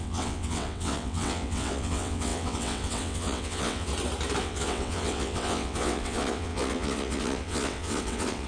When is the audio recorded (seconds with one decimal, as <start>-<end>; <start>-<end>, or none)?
3.9-4.4